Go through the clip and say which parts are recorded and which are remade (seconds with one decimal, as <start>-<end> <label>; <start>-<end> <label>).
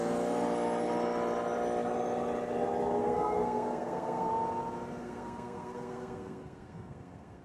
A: 0.0-3.0 recorded; 3.0-4.3 remade; 4.3-5.0 recorded; 5.0-7.4 remade